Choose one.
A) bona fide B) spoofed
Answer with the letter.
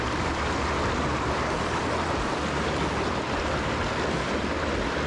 B